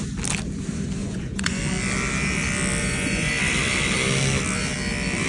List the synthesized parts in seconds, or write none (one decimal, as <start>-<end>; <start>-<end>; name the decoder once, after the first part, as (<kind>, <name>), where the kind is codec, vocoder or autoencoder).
1.0-1.6 (vocoder, Vocos); 2.8-3.3